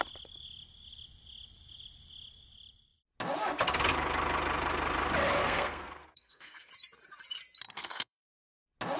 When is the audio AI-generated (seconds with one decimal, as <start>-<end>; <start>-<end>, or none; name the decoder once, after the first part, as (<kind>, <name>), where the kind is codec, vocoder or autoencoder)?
5.4-6.7 (codec, SNAC); 7.8-8.4